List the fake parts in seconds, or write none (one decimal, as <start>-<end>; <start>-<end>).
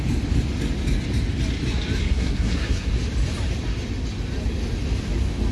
2.0-2.9